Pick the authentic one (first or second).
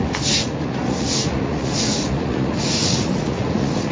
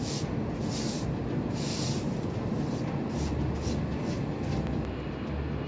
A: second